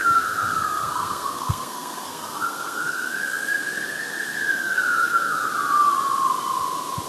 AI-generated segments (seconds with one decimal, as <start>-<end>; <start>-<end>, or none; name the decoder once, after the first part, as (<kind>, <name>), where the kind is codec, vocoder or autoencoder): 0.0-5.5 (codec, SNAC)